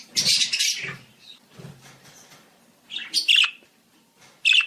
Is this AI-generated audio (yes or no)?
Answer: yes